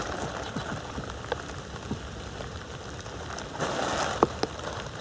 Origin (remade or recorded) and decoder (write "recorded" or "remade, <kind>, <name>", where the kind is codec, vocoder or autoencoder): remade, vocoder, BigVGAN v2